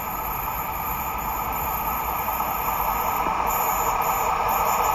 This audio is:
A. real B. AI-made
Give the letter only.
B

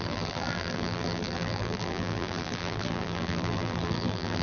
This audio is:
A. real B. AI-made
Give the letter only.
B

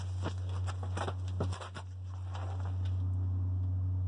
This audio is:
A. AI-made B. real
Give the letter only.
B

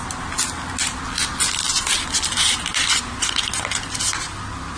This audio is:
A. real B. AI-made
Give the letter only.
A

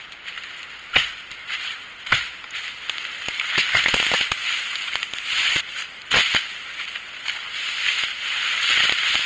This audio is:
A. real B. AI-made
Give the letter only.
A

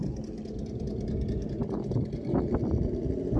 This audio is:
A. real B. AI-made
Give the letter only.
A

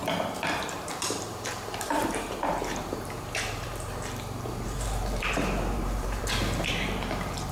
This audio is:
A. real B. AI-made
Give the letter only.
B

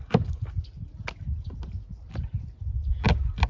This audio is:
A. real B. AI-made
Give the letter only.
A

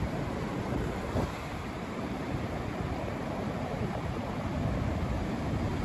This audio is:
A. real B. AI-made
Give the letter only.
B